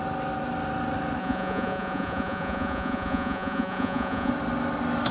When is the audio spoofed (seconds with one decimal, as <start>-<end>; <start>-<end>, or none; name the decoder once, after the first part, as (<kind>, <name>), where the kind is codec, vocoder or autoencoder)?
1.2-4.3 (vocoder, Vocos)